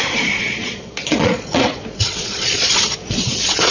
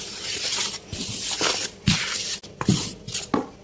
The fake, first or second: first